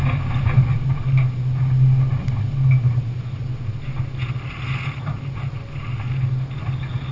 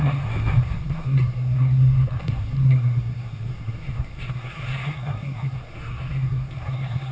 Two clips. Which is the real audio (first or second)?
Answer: first